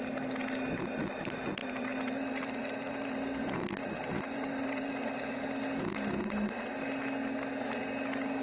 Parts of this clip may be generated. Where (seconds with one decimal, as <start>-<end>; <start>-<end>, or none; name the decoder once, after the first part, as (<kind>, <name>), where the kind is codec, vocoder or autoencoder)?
1.6-4.9 (vocoder, BigVGAN v2)